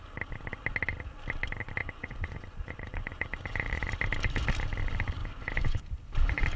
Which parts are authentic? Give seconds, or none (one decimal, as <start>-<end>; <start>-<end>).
0.0-1.8; 3.9-5.2; 5.8-6.6